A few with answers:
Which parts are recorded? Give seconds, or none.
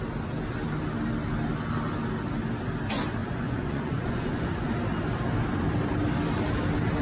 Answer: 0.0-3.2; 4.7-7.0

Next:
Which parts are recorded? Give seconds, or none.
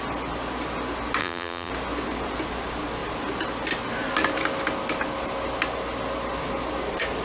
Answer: 0.0-1.2; 1.7-7.2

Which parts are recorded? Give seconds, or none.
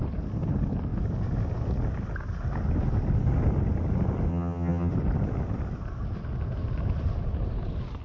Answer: 0.0-4.3; 4.9-8.0